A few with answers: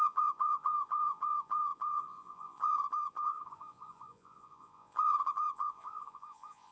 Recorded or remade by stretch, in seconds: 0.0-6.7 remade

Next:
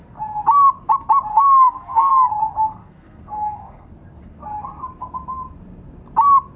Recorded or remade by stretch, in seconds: 0.0-1.3 recorded; 1.3-2.1 remade; 2.1-2.8 recorded; 2.8-3.9 remade; 3.9-6.6 recorded

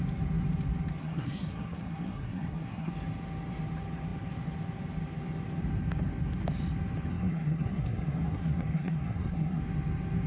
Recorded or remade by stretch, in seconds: 0.0-1.0 recorded; 1.0-2.9 remade; 2.9-7.1 recorded; 7.1-9.6 remade; 9.6-10.3 recorded

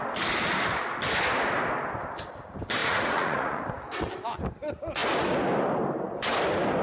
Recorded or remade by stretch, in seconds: 0.0-2.8 recorded; 2.8-3.6 remade; 3.6-6.8 recorded

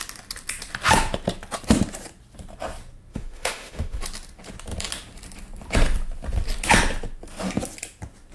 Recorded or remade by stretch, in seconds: 0.0-3.1 recorded; 3.1-4.0 remade; 4.0-8.3 recorded

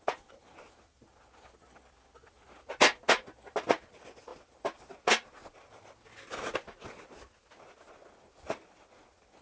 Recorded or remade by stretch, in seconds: 0.0-9.4 recorded

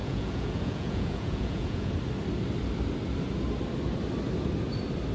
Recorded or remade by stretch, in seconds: 0.0-1.9 remade; 1.9-5.1 recorded